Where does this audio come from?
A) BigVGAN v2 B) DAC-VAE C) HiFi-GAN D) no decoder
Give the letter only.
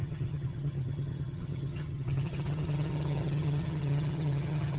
C